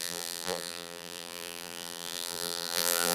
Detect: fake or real fake